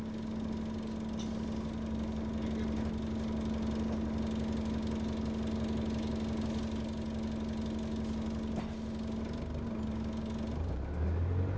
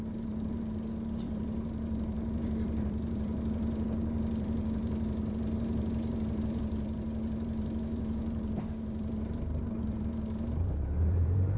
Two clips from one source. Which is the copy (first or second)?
second